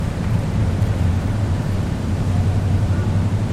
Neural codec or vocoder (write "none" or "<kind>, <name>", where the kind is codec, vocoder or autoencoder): vocoder, BigVGAN v2